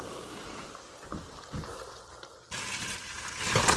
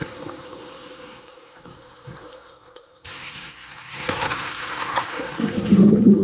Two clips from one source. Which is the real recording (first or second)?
first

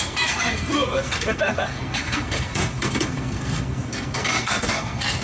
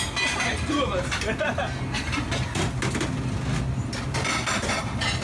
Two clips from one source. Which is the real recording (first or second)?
second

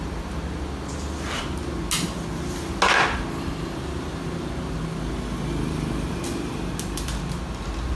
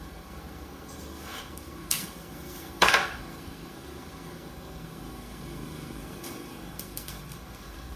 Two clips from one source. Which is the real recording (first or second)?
first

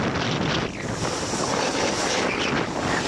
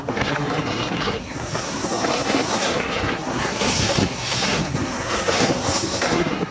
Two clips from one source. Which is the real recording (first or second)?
first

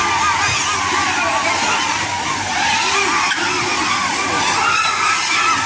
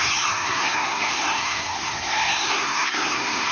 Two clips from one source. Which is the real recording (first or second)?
first